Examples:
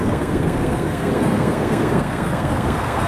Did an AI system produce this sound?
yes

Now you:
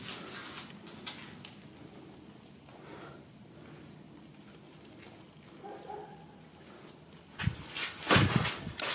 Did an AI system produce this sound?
no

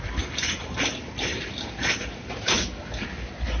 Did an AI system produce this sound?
no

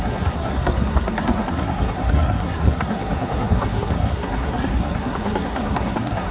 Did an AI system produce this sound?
yes